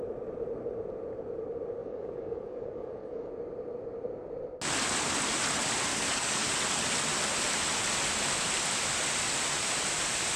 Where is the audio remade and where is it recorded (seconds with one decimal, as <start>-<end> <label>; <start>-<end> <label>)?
0.0-1.8 recorded; 1.8-3.3 remade; 3.3-5.9 recorded; 5.9-6.5 remade; 6.5-10.4 recorded